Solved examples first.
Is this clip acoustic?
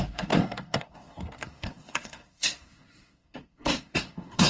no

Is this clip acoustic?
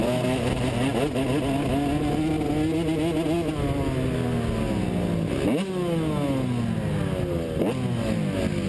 yes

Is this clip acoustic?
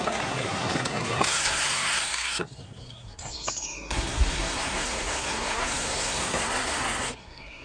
no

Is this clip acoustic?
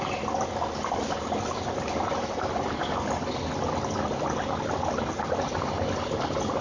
yes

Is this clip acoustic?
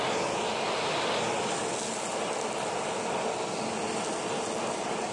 yes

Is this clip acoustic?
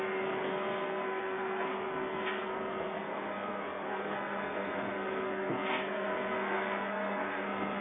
no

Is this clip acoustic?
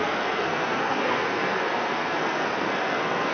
no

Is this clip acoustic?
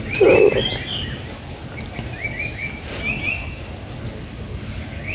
yes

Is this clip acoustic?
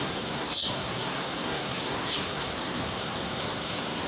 no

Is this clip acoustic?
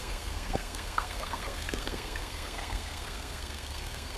no